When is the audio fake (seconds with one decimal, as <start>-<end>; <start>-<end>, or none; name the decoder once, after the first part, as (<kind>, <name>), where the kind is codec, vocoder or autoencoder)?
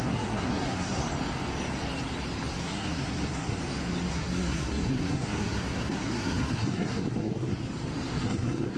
0.0-1.0 (codec, SNAC); 2.6-3.6; 4.1-7.6; 8.1-8.8